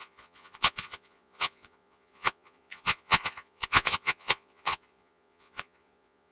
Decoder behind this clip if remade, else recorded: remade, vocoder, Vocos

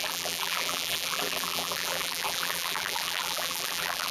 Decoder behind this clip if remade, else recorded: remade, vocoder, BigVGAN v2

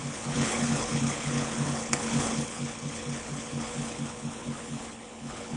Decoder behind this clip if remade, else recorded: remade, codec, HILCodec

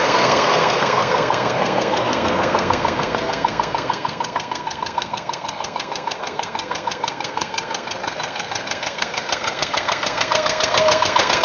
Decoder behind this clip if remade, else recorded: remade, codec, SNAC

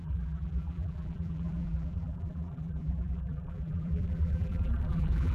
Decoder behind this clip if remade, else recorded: remade, vocoder, BigVGAN v2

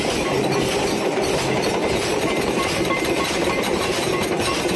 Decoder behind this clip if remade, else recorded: recorded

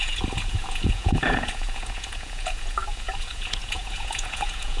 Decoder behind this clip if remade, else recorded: remade, vocoder, Vocos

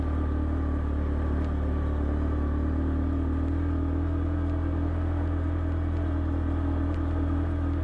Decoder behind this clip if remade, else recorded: recorded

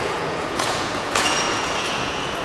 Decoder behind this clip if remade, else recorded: remade, vocoder, Vocos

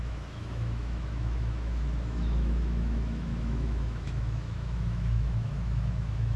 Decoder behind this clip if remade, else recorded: remade, autoencoder, DAC-VAE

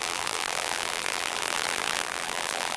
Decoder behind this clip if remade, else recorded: remade, vocoder, BigVGAN v2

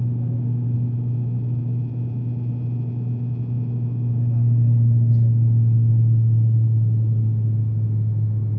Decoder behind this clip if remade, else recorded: recorded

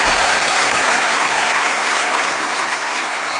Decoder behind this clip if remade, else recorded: remade, codec, SNAC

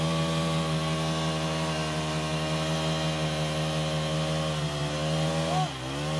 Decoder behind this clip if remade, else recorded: recorded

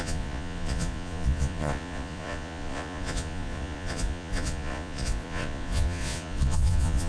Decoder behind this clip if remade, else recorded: remade, vocoder, Vocos